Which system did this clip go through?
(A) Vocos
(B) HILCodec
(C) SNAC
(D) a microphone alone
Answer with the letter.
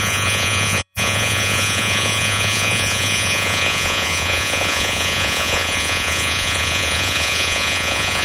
A